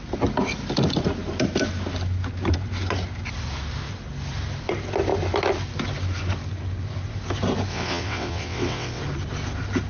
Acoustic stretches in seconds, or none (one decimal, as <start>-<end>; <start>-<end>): 0.0-7.7; 9.0-9.9